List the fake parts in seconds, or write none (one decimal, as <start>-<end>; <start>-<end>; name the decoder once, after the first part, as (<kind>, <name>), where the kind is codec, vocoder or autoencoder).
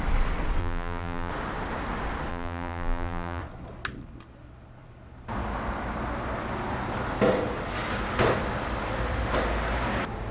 0.6-1.3 (vocoder, BigVGAN v2); 2.3-3.4